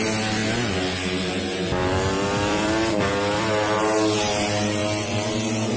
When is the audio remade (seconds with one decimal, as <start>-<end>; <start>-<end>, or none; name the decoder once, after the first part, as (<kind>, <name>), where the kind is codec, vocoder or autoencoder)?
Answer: 1.8-3.1 (vocoder, BigVGAN v2)